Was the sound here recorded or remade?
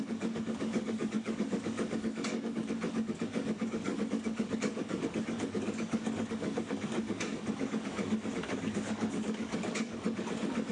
remade